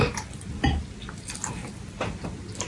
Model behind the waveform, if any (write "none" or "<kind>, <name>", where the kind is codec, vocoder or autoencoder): none